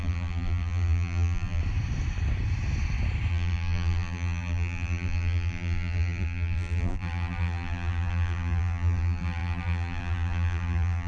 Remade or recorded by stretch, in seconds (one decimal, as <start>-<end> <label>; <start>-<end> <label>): 0.0-1.6 remade; 1.6-3.3 recorded; 3.3-11.1 remade